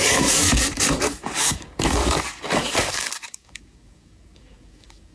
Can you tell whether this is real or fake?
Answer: fake